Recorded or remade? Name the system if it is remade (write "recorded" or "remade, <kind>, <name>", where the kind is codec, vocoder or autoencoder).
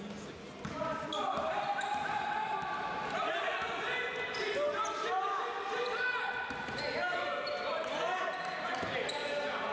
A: recorded